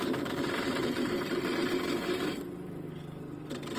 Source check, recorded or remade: remade